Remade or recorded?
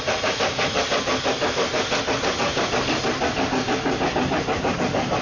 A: recorded